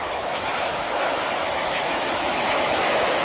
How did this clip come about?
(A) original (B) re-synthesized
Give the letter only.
B